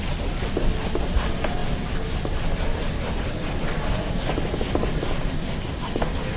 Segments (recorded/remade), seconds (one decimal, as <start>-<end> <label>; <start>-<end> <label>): 0.0-6.4 recorded